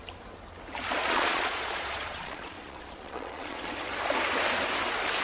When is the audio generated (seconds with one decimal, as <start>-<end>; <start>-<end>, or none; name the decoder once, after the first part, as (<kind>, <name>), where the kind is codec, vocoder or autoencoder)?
1.0-3.7 (vocoder, Vocos)